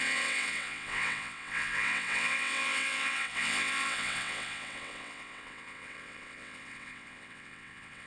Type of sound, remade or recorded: remade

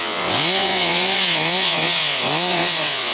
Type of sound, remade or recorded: remade